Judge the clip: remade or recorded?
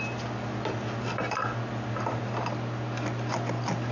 recorded